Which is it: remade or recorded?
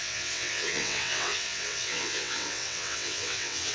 remade